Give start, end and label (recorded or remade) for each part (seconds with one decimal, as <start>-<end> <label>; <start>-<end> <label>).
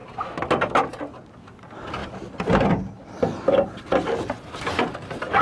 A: 0.0-5.4 recorded